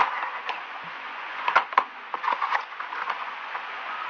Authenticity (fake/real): fake